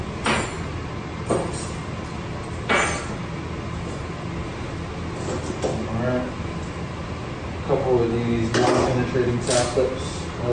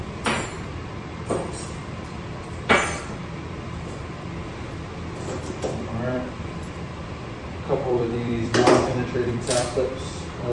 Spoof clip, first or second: second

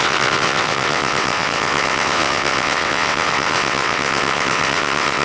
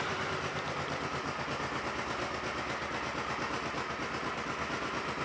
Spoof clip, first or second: first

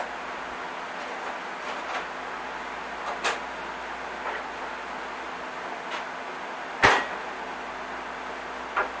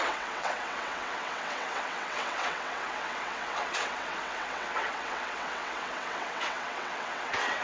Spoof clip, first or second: second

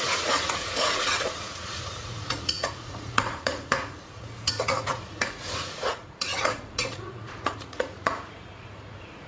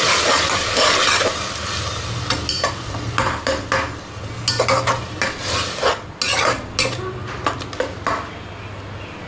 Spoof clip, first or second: first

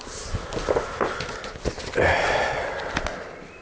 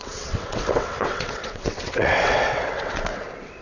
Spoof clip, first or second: second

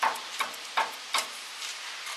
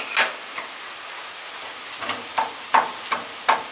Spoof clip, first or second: first